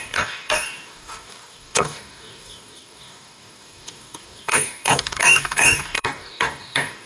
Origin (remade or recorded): remade